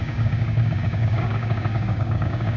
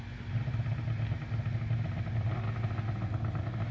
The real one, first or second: second